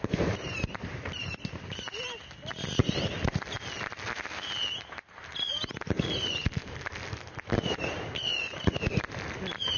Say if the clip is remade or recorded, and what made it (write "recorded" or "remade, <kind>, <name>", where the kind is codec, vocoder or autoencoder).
recorded